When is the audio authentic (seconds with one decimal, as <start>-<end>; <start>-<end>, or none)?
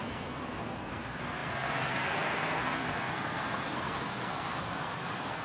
none